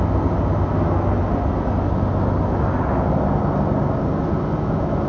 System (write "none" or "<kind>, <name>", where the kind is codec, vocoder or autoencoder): none